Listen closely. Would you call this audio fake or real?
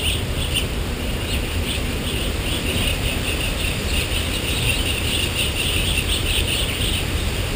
fake